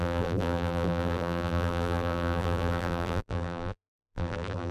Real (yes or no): no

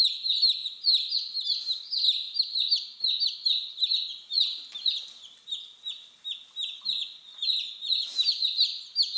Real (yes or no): yes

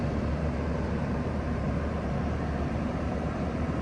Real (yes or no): no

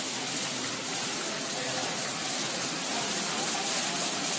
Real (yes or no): yes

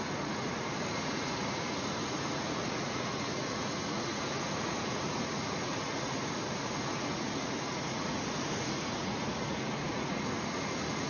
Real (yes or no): no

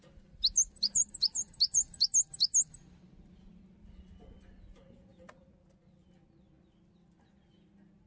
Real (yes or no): yes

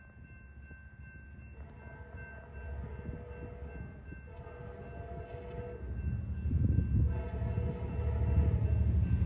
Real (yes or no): yes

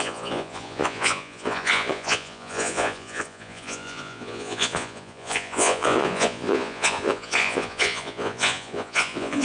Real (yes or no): no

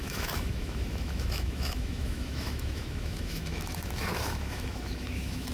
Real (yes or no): no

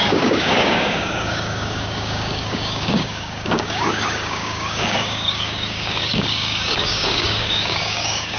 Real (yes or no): no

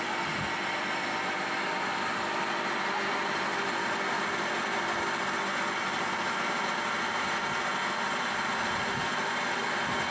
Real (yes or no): yes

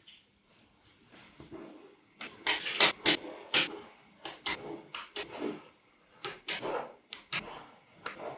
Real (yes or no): yes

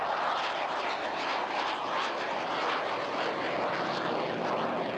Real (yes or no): yes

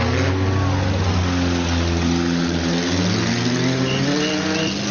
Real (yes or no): yes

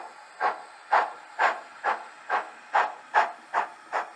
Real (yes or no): yes